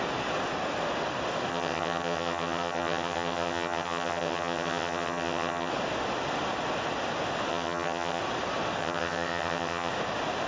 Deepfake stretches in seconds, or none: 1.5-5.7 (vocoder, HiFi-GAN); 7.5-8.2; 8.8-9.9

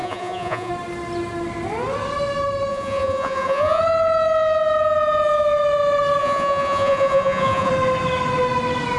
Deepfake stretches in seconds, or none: 0.0-0.7 (vocoder, Vocos); 2.7-3.8; 6.2-7.7